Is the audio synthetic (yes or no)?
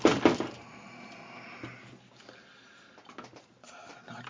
no